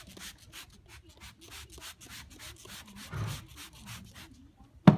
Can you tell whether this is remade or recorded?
recorded